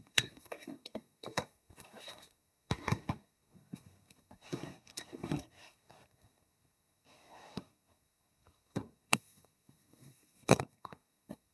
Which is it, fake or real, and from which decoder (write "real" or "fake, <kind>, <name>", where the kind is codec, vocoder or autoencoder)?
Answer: fake, codec, SNAC